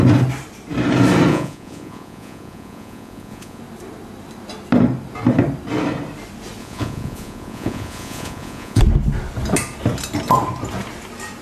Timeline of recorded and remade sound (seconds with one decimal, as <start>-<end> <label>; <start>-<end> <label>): 0.0-1.3 recorded; 1.3-3.6 remade; 3.6-6.6 recorded; 6.6-8.8 remade; 8.8-11.4 recorded